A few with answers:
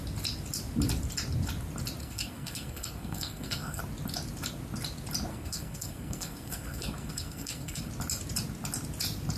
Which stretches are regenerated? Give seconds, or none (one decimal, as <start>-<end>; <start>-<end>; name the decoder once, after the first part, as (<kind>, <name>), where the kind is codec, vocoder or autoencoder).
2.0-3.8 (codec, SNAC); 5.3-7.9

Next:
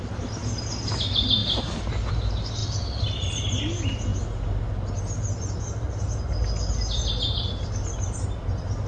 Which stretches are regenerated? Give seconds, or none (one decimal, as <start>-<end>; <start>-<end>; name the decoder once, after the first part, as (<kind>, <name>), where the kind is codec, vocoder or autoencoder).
1.4-2.1 (vocoder, BigVGAN v2); 2.6-3.3

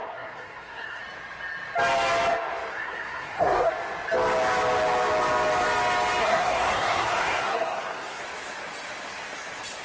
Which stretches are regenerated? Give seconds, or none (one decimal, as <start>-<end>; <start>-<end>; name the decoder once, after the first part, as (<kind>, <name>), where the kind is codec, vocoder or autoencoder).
0.0-1.0 (codec, SNAC); 2.7-3.7; 6.2-8.2

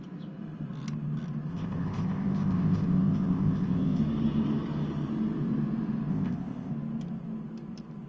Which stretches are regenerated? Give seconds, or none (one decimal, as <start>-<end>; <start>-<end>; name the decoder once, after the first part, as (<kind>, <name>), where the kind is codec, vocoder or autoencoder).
1.5-4.0 (codec, ZipCodec); 6.1-6.7